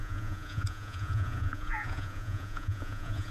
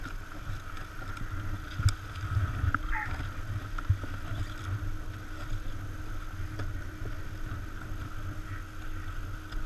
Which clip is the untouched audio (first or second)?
second